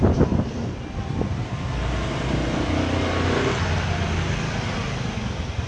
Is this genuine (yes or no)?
yes